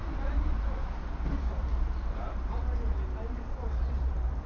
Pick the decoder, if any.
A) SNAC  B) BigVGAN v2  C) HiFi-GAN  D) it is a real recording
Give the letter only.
B